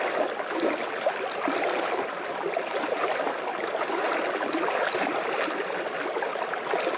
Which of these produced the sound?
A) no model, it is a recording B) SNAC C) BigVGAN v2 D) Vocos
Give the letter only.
A